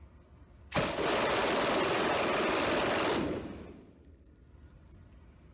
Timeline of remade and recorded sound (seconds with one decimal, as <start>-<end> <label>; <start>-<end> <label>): 0.0-5.5 recorded